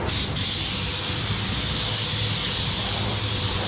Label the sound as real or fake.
real